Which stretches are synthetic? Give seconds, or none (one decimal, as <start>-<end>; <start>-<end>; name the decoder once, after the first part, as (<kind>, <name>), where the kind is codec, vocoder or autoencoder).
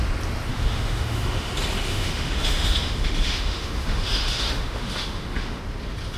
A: 0.5-1.5 (autoencoder, DAC-VAE); 1.9-5.6